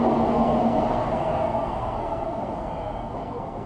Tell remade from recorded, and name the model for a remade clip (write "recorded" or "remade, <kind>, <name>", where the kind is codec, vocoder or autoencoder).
remade, codec, SNAC